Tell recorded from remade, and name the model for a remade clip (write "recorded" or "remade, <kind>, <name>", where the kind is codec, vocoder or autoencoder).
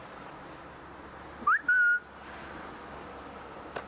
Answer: recorded